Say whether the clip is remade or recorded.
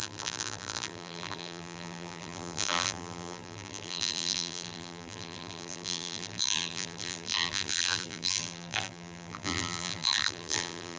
remade